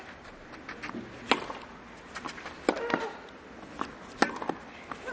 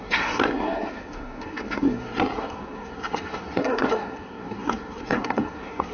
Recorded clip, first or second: first